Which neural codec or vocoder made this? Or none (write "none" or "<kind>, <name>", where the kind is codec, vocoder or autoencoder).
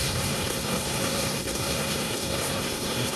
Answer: codec, SNAC